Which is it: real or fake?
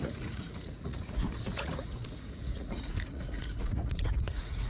fake